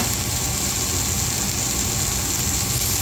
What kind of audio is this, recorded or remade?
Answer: recorded